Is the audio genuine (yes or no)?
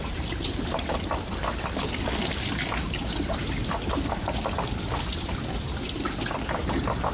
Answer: yes